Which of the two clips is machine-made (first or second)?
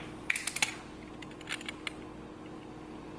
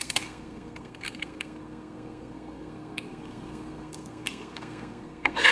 second